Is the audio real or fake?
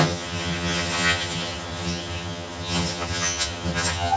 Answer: fake